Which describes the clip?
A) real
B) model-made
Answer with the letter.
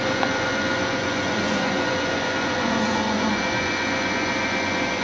B